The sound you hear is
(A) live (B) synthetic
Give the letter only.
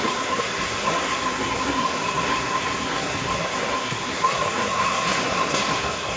B